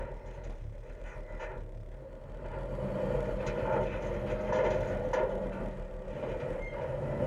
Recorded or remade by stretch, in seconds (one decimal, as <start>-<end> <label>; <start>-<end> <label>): 0.0-7.3 recorded